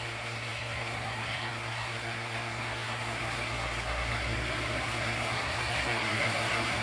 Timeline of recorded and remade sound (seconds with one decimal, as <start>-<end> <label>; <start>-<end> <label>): 0.0-6.8 remade